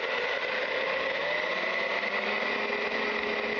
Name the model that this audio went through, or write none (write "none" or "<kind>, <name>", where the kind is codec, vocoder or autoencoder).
none